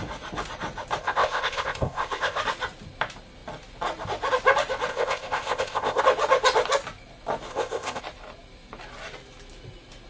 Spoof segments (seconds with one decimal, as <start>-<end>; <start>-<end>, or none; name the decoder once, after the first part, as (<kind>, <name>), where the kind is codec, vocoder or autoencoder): 1.0-2.4 (codec, ZipCodec); 4.9-6.0; 7.5-8.0